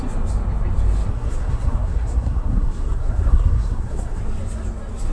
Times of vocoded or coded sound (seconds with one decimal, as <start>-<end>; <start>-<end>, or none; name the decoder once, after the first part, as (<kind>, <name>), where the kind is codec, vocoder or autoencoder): 1.1-4.2 (codec, SNAC)